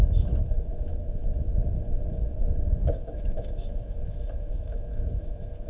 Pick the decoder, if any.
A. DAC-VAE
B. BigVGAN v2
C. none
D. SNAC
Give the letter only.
A